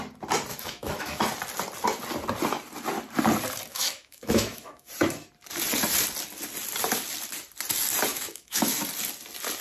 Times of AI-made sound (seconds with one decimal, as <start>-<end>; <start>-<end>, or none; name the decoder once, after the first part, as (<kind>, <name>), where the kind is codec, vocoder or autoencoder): 0.5-1.2 (autoencoder, DAC-VAE); 3.7-4.9; 8.1-8.8